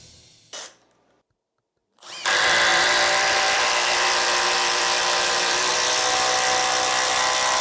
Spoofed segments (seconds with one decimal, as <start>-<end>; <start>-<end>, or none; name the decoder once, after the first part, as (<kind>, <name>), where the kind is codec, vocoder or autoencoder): 2.7-5.7 (vocoder, BigVGAN v2)